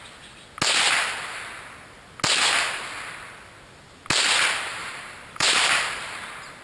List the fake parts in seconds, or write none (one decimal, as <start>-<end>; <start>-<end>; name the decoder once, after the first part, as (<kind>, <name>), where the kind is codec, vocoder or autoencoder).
4.8-6.1 (vocoder, BigVGAN v2)